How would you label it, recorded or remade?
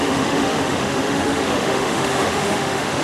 remade